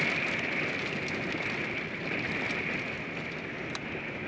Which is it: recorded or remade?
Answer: recorded